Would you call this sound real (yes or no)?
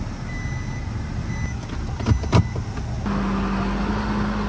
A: yes